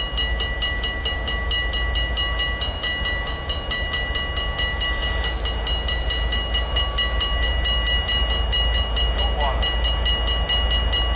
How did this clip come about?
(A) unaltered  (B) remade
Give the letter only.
A